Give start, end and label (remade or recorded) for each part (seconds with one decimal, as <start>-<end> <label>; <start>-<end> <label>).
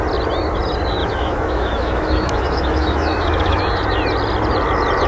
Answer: 0.0-1.0 recorded; 1.0-3.6 remade; 3.6-5.1 recorded